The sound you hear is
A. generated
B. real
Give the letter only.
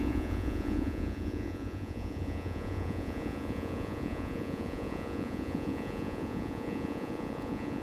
A